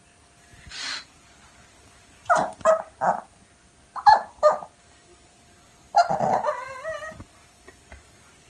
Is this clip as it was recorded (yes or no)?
yes